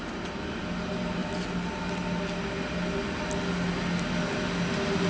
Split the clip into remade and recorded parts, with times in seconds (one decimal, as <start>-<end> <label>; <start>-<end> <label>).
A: 0.0-5.1 recorded